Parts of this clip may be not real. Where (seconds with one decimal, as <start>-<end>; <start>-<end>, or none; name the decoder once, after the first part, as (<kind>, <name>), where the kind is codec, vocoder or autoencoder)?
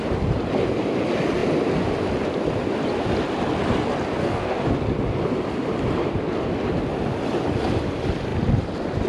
4.2-4.7 (codec, DAC)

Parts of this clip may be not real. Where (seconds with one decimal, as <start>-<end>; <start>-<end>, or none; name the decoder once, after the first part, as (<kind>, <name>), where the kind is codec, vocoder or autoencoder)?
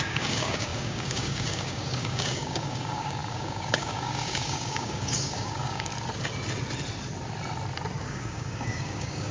0.0-5.9 (codec, DAC); 8.0-9.3